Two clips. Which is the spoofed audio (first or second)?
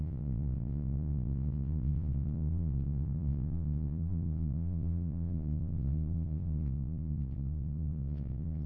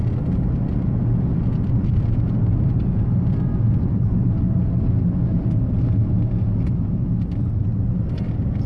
first